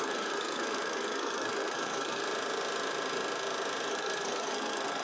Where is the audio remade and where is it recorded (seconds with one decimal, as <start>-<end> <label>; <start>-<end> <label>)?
0.0-2.2 remade; 2.2-3.9 recorded; 3.9-5.0 remade